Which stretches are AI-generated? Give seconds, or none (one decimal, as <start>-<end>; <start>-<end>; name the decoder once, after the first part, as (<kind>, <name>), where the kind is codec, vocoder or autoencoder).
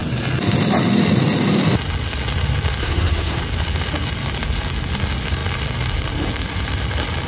2.8-3.4 (codec, SNAC)